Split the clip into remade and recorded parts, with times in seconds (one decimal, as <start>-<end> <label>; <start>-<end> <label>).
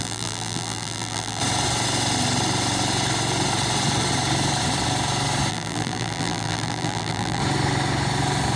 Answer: 0.0-1.4 remade; 1.4-5.5 recorded; 5.5-7.4 remade; 7.4-8.6 recorded